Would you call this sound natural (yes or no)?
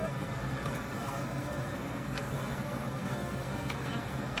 no